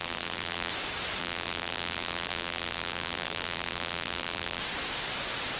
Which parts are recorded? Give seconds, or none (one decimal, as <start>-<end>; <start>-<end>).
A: 0.7-1.2; 4.6-5.6